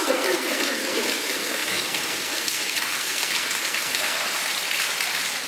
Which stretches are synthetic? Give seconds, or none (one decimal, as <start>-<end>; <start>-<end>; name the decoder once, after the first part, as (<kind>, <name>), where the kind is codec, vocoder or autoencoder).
0.0-4.4 (codec, SNAC)